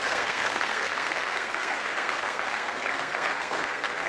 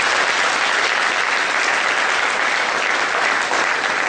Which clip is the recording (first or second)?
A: second